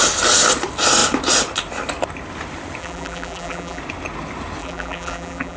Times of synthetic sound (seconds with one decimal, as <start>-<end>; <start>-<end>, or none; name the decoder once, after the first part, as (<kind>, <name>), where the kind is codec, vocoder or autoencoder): 2.8-3.8 (vocoder, BigVGAN v2); 4.6-5.6